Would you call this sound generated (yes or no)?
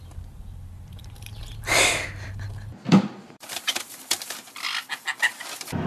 yes